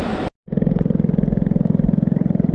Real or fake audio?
fake